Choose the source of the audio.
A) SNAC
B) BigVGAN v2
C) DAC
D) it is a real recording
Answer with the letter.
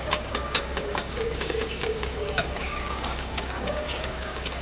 C